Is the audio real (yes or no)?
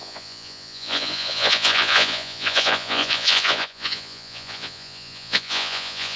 no